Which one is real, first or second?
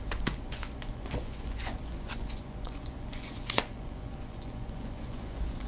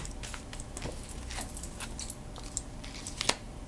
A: second